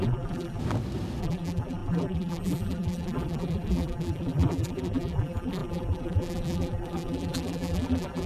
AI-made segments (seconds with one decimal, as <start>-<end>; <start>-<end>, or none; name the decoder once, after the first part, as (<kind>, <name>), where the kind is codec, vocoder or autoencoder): 0.0-0.6 (vocoder, BigVGAN v2); 1.2-8.3